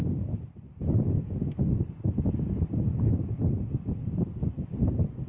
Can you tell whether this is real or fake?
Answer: real